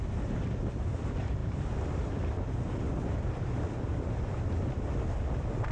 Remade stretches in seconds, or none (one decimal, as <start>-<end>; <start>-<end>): 0.0-5.7